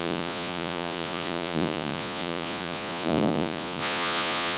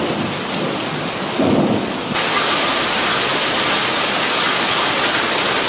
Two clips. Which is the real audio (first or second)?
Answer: second